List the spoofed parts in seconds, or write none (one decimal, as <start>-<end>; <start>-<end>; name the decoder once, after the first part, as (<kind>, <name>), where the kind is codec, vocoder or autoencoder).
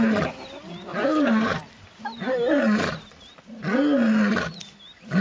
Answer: none